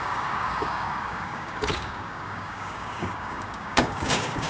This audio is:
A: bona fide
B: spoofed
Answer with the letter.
B